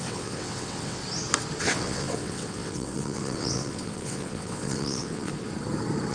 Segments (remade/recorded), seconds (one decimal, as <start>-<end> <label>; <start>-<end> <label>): 0.0-1.0 remade; 1.0-1.6 recorded; 1.6-5.3 remade; 5.3-6.1 recorded